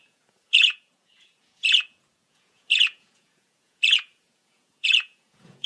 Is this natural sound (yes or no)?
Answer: no